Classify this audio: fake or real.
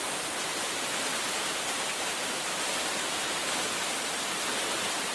fake